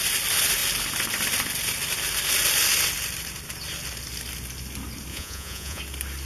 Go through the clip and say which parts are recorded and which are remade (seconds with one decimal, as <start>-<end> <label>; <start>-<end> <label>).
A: 0.0-5.1 recorded; 5.1-5.8 remade; 5.8-6.3 recorded